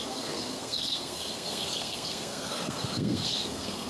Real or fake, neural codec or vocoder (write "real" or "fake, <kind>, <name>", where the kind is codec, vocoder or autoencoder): fake, codec, SNAC